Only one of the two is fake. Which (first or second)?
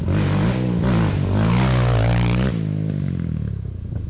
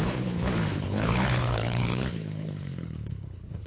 second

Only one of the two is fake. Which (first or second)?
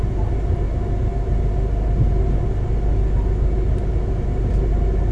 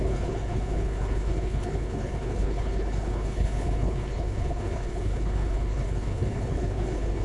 second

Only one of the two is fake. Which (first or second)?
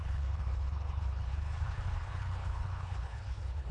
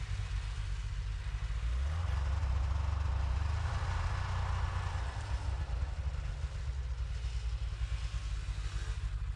first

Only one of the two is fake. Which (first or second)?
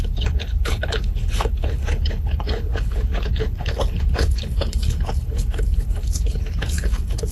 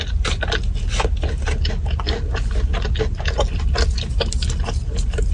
first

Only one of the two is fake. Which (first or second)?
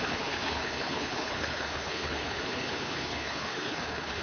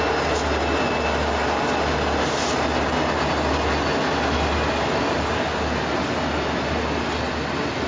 first